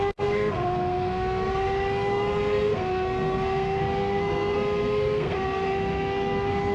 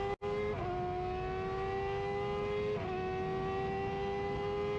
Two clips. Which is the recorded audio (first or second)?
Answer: second